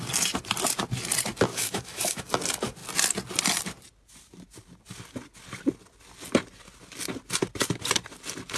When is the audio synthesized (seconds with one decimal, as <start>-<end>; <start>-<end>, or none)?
1.5-2.2